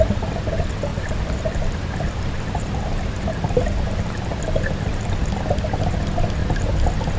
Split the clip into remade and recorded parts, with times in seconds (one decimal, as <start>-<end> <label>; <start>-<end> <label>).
0.0-0.9 recorded; 0.9-5.0 remade; 5.0-6.4 recorded; 6.4-7.2 remade